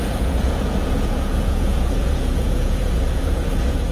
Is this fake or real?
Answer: fake